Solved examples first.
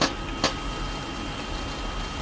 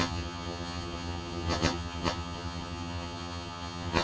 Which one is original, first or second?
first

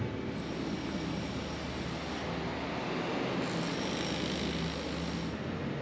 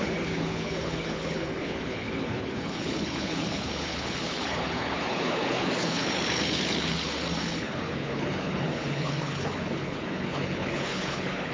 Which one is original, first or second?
first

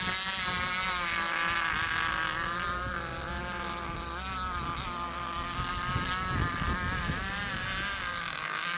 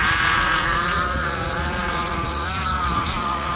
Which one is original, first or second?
first